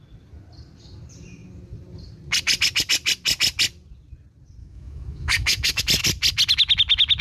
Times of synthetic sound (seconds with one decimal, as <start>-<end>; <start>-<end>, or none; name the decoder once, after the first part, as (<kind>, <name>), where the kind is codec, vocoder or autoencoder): 4.6-5.8 (autoencoder, DAC-VAE)